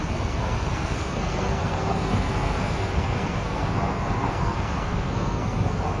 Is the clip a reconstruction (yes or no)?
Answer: yes